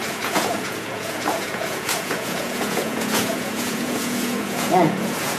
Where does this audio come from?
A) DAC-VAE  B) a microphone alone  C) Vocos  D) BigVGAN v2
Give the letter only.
C